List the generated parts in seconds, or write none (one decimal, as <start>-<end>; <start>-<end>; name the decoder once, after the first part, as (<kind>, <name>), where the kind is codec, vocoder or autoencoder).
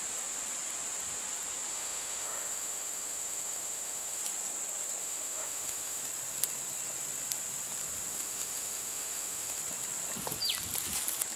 1.7-4.2 (autoencoder, DAC-VAE); 5.0-6.0; 8.1-9.6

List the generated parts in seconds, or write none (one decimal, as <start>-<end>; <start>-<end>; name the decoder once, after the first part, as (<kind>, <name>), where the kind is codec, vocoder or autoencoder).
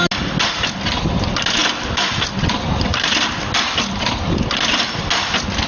none